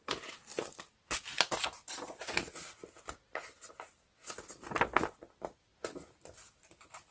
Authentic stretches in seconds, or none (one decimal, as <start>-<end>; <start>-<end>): 0.0-7.1